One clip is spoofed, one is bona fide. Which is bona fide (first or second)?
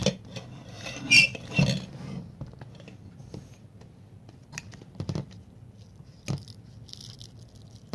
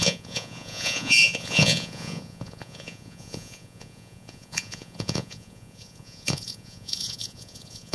first